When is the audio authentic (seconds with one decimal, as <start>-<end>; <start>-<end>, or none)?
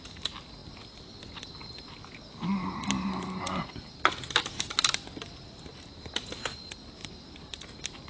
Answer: 0.0-8.1